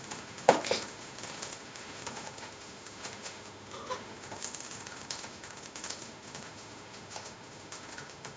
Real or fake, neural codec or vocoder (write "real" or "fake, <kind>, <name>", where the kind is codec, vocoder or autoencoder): fake, autoencoder, DAC-VAE